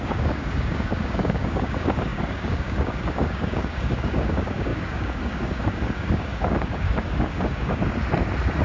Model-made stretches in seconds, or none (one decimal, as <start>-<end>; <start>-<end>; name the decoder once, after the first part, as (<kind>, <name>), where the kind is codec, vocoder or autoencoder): 0.0-7.8 (codec, DAC)